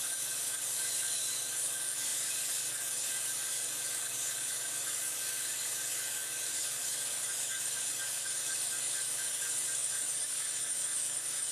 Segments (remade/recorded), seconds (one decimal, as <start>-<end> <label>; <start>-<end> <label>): 0.0-11.5 remade